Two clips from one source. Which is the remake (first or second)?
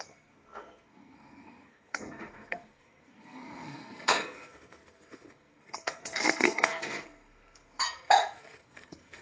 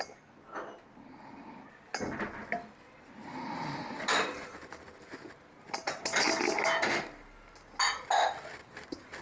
first